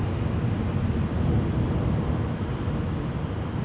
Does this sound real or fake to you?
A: real